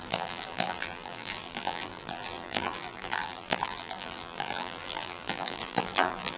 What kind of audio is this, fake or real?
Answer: fake